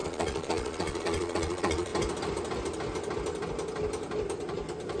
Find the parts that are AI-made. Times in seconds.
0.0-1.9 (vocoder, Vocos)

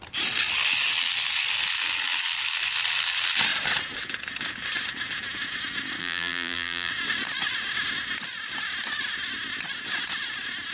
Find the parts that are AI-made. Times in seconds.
6.0-6.9 (vocoder, BigVGAN v2)

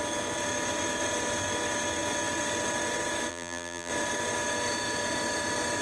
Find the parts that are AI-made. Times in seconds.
3.3-3.9 (vocoder, BigVGAN v2)

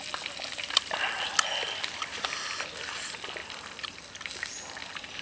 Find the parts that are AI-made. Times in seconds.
1.5-2.4 (vocoder, BigVGAN v2); 3.4-4.0

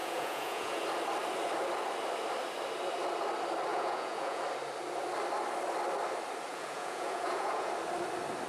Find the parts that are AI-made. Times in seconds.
0.0-0.8 (vocoder, Vocos); 3.7-4.4; 6.5-7.7

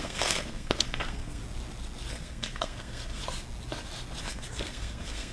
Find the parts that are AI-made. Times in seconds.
0.0-1.4 (codec, SNAC); 2.1-3.2; 4.2-5.3

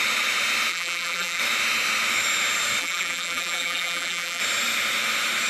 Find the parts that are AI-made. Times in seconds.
0.7-1.4 (vocoder, BigVGAN v2); 2.8-4.4